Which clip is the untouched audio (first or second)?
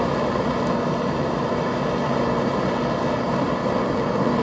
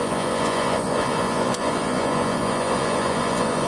first